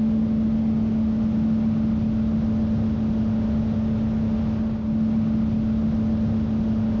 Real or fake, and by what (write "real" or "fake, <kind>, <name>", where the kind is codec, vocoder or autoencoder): real